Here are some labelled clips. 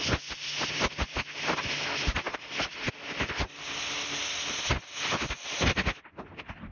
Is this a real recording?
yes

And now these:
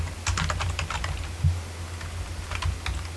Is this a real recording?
yes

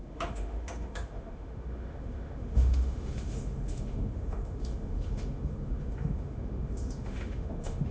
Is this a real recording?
no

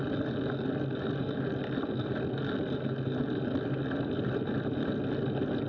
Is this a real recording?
yes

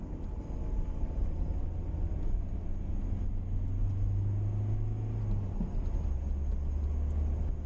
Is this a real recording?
yes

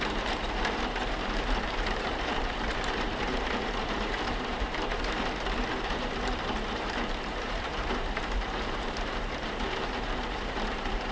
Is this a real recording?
no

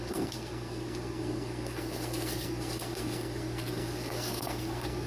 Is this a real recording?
no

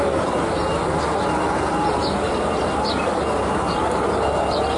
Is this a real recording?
no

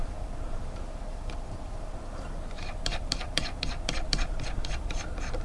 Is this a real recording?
no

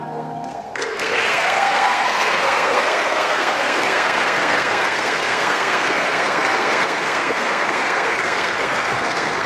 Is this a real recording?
no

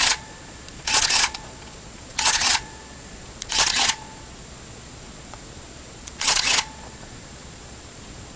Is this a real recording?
no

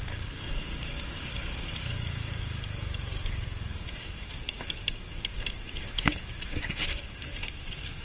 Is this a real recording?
no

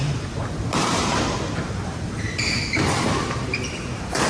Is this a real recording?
no